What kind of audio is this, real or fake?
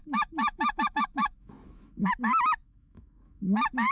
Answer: fake